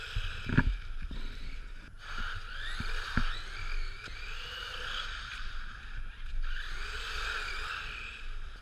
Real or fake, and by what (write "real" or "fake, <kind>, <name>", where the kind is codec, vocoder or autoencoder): real